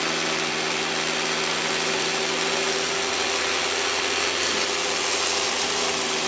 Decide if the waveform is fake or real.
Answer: real